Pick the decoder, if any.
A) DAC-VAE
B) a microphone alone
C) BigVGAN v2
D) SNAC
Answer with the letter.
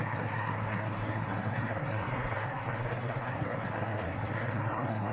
D